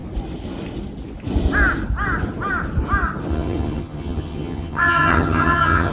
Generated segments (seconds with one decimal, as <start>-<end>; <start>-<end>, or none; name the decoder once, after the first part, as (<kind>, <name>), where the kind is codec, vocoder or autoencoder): 3.3-5.9 (vocoder, HiFi-GAN)